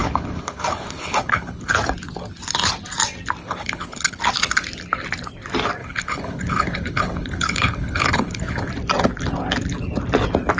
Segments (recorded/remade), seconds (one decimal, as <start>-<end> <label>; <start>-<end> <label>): 0.0-1.7 remade; 1.7-3.4 recorded; 3.4-4.2 remade; 4.2-5.8 recorded; 5.8-8.7 remade; 8.7-10.6 recorded